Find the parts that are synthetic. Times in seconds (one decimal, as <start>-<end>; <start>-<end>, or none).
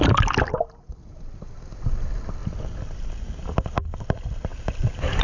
none